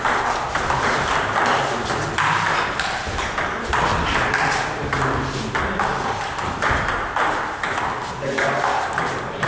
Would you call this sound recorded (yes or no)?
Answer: yes